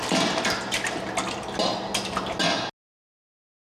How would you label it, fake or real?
real